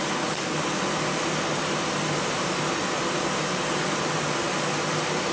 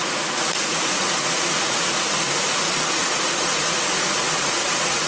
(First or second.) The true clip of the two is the first